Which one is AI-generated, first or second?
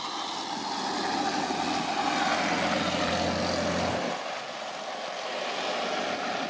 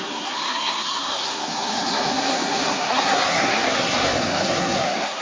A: second